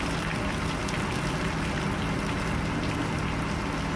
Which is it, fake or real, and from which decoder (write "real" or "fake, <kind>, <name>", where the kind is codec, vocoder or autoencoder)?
real